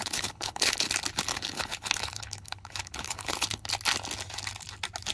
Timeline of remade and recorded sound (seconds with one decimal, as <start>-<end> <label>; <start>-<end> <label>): 0.0-0.9 remade; 0.9-1.3 recorded; 1.3-3.7 remade; 3.7-5.1 recorded